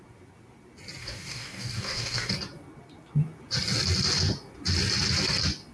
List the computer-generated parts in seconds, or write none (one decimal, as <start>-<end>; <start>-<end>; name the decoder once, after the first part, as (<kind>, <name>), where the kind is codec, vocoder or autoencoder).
1.0-2.3 (codec, DAC)